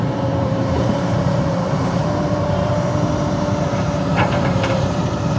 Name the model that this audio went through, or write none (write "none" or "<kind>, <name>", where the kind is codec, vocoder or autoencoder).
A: vocoder, BigVGAN v2